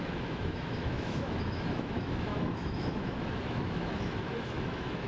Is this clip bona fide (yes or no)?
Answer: no